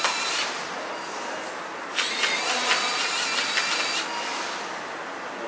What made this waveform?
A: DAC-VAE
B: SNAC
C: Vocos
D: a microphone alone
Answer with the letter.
D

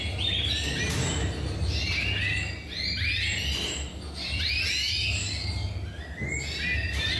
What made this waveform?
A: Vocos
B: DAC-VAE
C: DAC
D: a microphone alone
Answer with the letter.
D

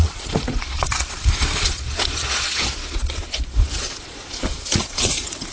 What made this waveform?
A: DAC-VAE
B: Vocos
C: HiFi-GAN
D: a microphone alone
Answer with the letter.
B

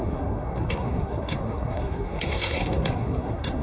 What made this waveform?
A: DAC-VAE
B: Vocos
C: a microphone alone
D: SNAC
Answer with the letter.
D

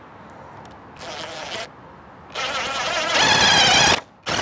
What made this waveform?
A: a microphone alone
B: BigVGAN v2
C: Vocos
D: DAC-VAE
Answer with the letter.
A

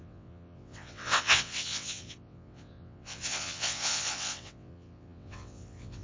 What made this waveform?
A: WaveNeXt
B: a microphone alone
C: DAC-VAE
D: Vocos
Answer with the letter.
A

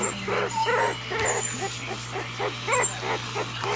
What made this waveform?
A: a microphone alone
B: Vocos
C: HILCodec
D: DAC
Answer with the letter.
A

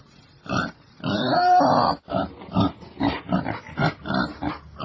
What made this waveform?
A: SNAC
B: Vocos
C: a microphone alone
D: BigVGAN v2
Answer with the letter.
C